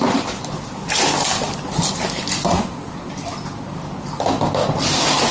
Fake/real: real